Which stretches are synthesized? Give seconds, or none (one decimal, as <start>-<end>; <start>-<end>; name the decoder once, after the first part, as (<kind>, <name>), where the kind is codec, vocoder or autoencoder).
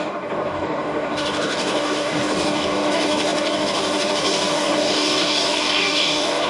0.0-6.5 (codec, DAC)